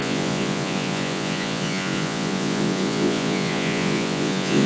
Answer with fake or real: fake